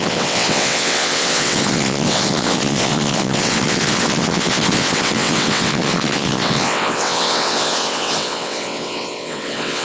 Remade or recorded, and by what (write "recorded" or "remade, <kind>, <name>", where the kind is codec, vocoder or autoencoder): remade, vocoder, WaveNeXt